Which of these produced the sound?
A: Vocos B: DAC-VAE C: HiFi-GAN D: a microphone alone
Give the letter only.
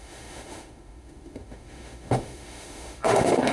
B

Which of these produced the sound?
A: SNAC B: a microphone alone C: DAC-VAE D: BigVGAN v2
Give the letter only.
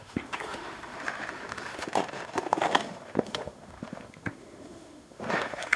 C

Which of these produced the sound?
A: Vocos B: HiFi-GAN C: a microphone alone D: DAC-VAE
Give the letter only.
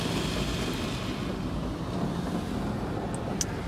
C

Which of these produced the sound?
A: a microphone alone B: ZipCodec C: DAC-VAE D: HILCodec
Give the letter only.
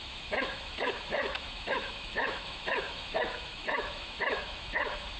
C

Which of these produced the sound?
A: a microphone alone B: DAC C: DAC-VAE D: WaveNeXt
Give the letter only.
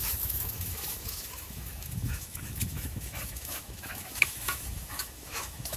C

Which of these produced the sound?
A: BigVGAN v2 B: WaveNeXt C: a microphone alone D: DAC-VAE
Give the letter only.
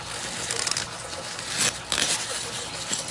C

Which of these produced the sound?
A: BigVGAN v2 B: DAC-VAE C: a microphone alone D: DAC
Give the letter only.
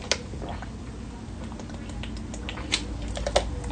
C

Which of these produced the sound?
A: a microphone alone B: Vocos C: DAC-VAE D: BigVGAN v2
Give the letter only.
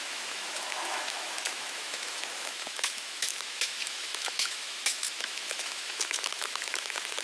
C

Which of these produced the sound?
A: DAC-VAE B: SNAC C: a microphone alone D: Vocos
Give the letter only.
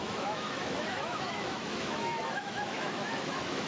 A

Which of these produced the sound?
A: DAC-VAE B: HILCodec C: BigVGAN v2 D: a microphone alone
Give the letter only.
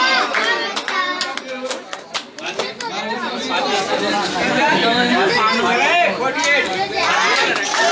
D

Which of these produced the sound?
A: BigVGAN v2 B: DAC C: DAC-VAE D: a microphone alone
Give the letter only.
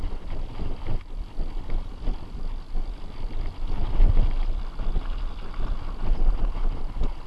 D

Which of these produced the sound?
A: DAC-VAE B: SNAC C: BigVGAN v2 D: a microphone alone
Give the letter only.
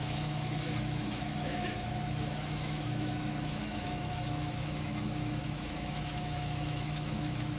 A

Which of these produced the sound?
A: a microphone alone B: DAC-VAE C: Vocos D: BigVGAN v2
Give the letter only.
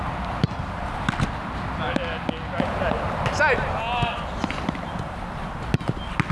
A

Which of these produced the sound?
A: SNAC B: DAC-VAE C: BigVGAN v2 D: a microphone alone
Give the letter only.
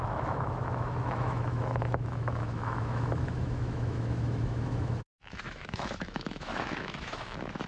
B